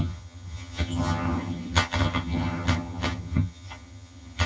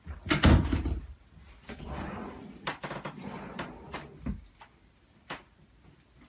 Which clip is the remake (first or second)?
first